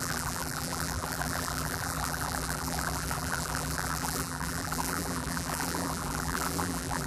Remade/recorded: remade